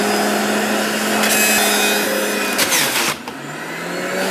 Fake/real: real